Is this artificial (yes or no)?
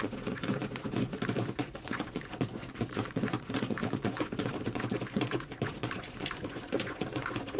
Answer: yes